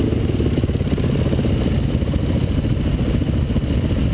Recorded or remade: recorded